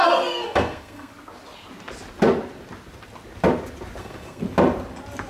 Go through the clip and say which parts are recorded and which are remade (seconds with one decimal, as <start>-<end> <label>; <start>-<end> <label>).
0.0-1.1 remade; 1.1-4.0 recorded; 4.0-4.4 remade; 4.4-5.3 recorded